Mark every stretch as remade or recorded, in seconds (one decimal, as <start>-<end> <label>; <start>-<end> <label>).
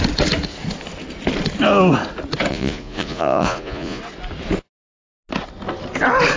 0.0-2.5 recorded; 2.5-4.0 remade; 4.0-6.4 recorded